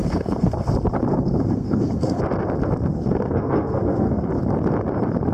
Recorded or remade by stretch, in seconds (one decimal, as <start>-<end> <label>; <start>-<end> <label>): 0.0-0.5 remade; 0.5-1.1 recorded; 1.1-2.2 remade; 2.2-2.9 recorded; 2.9-4.3 remade; 4.3-5.3 recorded